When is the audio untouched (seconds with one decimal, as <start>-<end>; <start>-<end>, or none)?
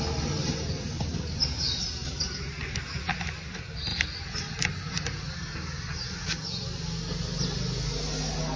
0.0-8.6